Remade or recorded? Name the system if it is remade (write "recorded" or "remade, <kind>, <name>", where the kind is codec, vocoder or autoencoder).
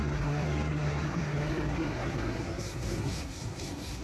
remade, codec, SNAC